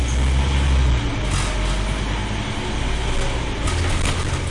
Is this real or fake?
real